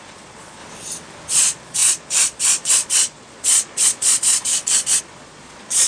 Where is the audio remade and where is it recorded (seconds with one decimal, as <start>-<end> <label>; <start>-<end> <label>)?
0.0-0.6 remade; 0.6-1.3 recorded; 1.3-4.5 remade; 4.5-5.0 recorded; 5.0-5.9 remade